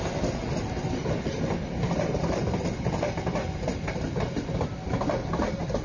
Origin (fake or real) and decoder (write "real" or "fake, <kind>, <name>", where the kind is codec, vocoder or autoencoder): real